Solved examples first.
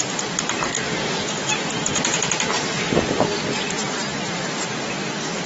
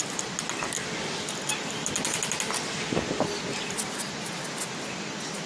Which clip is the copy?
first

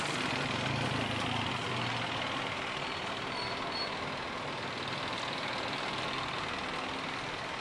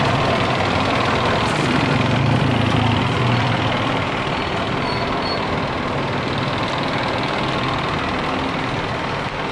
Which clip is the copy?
second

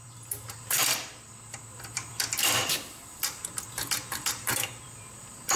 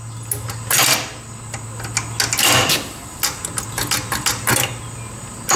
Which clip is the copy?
first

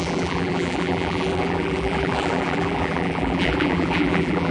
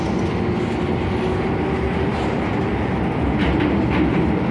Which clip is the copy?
first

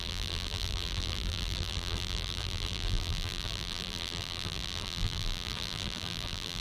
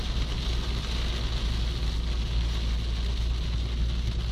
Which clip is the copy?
first